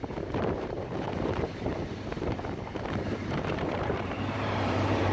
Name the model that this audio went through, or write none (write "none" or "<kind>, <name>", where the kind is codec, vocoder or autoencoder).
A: vocoder, BigVGAN v2